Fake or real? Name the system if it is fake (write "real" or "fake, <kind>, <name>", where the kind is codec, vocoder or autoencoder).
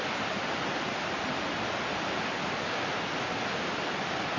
real